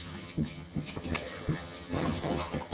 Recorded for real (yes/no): no